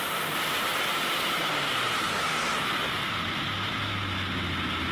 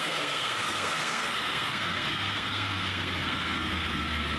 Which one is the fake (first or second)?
second